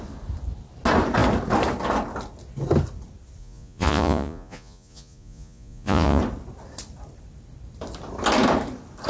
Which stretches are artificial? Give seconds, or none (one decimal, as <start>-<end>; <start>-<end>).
3.4-6.2